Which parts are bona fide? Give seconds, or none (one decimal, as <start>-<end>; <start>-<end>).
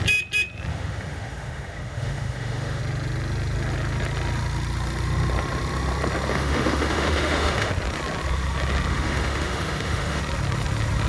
0.0-0.7; 2.8-6.3; 7.7-8.9; 10.2-11.1